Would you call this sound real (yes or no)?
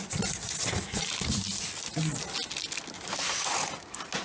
yes